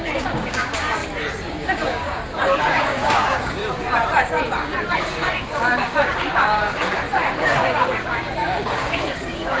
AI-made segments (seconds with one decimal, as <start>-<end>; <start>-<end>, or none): 0.0-1.0; 1.5-3.6; 4.9-9.6